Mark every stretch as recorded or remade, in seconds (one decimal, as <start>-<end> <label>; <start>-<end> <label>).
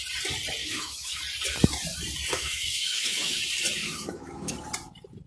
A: 0.0-0.6 recorded; 0.6-1.2 remade; 1.2-2.3 recorded; 2.3-3.4 remade; 3.4-3.8 recorded; 3.8-4.5 remade; 4.5-5.3 recorded